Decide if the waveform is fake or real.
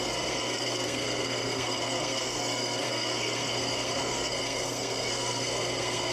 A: fake